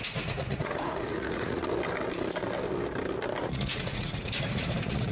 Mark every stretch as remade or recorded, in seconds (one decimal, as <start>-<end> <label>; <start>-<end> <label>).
0.0-1.6 remade; 1.6-3.4 recorded; 3.4-5.1 remade